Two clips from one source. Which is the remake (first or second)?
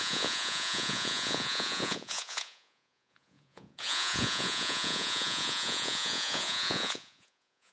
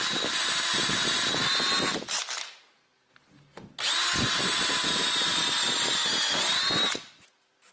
first